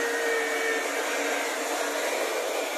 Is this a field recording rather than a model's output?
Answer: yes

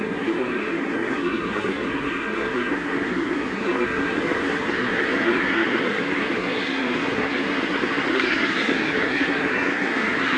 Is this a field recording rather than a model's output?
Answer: no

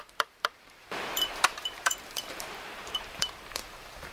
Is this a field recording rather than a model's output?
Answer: no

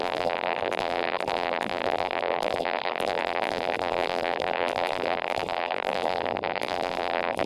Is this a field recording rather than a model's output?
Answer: no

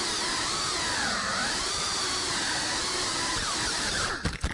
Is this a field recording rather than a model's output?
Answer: no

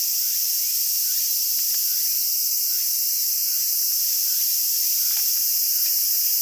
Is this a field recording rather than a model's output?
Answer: yes